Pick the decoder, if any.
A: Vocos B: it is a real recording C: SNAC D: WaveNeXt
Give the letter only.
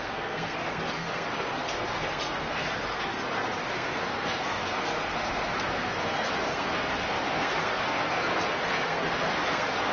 C